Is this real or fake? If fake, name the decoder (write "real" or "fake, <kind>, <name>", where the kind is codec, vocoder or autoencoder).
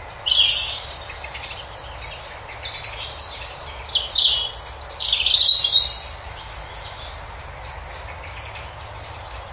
real